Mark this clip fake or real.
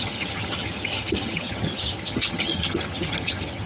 fake